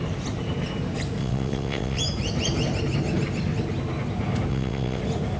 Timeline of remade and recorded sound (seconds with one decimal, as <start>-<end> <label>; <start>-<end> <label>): 0.0-1.2 recorded; 1.2-2.0 remade; 2.0-4.5 recorded; 4.5-5.0 remade; 5.0-5.4 recorded

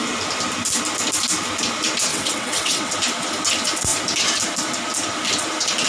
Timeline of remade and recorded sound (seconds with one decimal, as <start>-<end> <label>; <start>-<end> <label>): 0.0-2.1 recorded; 2.1-2.9 remade; 2.9-5.9 recorded

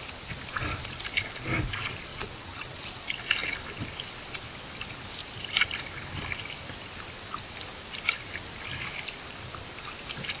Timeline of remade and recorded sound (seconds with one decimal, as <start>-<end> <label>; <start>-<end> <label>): 0.0-2.1 recorded; 2.1-2.8 remade; 2.8-10.4 recorded

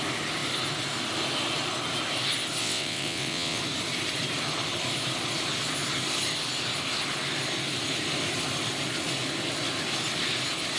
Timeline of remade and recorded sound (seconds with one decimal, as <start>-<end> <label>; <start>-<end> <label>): 0.0-2.6 recorded; 2.6-3.6 remade; 3.6-10.8 recorded

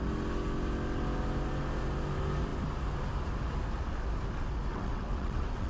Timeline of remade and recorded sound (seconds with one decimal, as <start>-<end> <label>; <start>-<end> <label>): 0.0-4.7 recorded; 4.7-5.7 remade